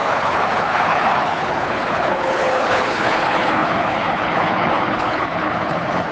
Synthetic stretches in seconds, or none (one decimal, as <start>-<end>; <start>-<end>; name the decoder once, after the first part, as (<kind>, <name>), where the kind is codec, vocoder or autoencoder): 0.0-6.1 (codec, HILCodec)